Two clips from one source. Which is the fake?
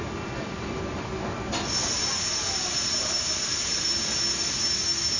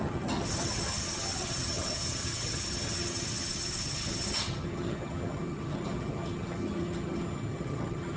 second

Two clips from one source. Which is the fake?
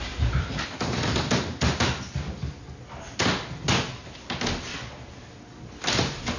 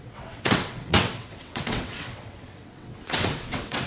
second